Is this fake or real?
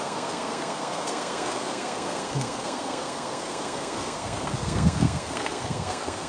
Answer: fake